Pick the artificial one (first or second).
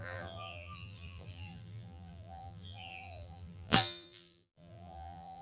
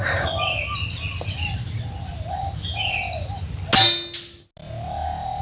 first